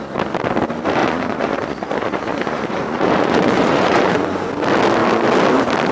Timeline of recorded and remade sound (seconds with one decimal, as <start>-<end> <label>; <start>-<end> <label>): 0.0-1.0 recorded; 1.0-4.5 remade; 4.5-5.9 recorded